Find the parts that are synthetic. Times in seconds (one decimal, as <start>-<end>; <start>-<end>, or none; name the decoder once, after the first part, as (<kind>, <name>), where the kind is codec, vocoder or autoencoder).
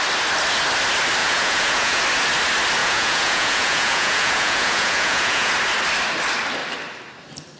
1.2-2.0 (vocoder, Vocos); 2.8-5.5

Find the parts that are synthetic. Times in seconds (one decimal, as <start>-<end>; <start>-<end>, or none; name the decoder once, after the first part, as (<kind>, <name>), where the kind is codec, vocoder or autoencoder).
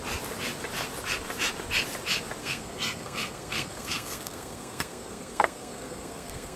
2.4-6.6 (codec, SNAC)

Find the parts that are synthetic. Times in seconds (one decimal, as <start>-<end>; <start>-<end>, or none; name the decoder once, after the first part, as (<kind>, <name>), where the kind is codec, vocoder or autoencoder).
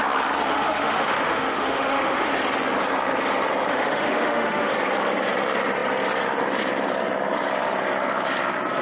0.5-2.3 (autoencoder, DAC-VAE); 3.7-4.7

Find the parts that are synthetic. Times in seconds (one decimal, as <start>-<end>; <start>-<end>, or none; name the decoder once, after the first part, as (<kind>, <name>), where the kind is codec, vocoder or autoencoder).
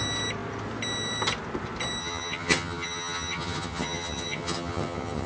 2.0-5.3 (vocoder, HiFi-GAN)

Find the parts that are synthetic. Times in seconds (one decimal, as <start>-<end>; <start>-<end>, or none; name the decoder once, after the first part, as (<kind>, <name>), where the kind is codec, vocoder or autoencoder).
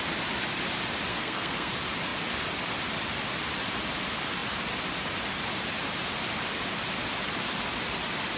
1.1-1.7 (codec, SNAC)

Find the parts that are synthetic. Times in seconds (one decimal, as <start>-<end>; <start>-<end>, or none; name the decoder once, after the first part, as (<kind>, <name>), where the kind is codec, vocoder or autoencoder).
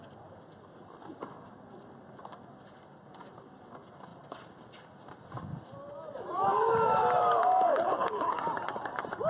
7.7-8.4 (codec, HILCodec)